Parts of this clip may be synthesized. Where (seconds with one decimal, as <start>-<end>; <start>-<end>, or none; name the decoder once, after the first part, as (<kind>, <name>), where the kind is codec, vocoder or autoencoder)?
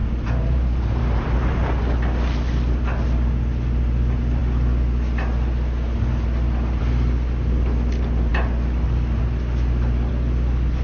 0.0-1.0 (vocoder, BigVGAN v2)